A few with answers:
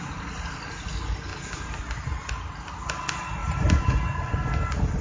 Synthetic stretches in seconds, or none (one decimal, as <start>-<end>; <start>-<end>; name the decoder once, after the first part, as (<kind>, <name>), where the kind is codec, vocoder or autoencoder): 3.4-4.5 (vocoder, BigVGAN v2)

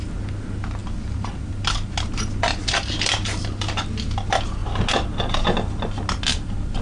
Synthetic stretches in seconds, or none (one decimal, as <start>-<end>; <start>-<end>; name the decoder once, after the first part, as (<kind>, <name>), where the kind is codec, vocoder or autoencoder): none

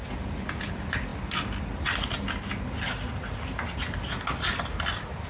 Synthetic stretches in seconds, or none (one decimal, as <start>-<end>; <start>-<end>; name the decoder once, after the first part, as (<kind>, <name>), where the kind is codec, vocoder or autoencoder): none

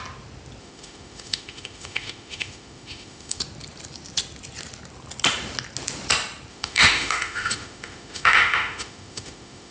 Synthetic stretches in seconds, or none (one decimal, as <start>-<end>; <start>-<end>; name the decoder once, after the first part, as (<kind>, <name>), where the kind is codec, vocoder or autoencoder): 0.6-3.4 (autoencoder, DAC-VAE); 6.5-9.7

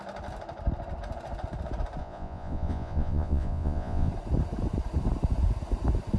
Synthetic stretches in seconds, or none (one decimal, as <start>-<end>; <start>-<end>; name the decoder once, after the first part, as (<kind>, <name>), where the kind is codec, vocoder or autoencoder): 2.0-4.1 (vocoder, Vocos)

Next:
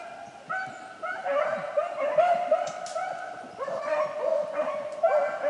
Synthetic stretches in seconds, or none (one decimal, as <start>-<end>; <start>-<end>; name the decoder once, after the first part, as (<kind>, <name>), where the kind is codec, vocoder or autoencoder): 3.0-4.9 (vocoder, Vocos)